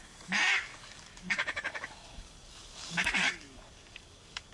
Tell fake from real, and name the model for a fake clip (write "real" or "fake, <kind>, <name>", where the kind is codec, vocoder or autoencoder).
fake, codec, DAC